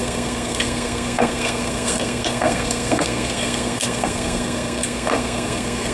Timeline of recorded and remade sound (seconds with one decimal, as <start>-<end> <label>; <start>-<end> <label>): 0.0-5.9 remade